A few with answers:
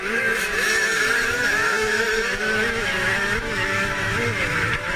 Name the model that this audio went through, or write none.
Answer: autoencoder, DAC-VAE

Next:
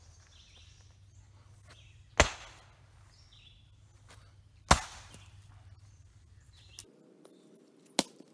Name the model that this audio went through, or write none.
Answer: none